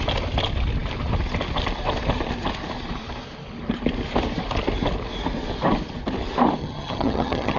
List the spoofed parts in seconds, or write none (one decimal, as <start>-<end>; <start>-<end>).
6.6-7.6